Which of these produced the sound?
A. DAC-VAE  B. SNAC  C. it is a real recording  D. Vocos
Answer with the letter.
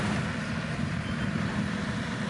C